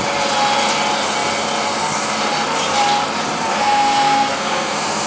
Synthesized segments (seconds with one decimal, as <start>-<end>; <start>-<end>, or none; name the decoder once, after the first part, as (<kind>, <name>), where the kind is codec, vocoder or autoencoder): 3.5-5.1 (codec, SNAC)